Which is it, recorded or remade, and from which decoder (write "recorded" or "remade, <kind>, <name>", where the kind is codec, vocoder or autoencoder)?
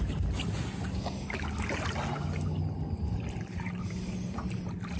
recorded